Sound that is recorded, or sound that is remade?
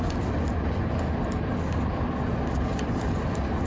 recorded